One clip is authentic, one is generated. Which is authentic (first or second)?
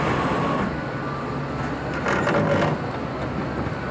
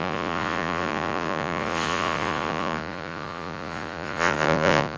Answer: first